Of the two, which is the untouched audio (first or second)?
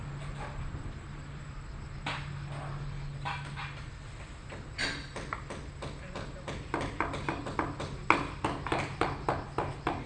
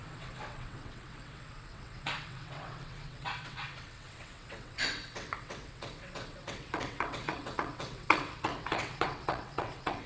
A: first